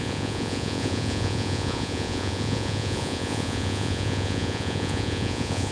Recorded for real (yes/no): no